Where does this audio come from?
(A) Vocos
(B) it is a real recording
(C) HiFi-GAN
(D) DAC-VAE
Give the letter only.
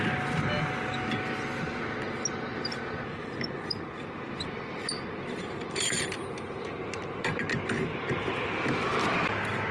B